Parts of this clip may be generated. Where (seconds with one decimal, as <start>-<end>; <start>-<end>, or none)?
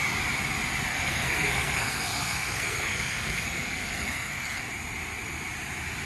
0.9-4.6